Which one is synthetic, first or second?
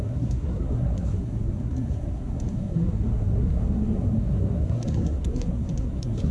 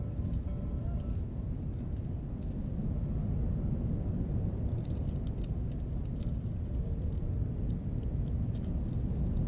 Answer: first